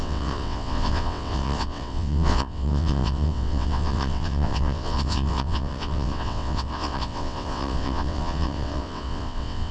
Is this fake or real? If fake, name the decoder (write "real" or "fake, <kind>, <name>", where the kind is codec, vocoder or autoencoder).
fake, vocoder, WaveNeXt